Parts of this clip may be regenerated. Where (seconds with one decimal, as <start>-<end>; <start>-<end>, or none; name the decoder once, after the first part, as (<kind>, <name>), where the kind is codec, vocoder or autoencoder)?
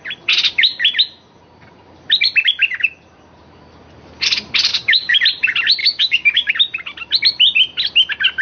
4.7-5.2 (codec, DAC); 5.8-6.5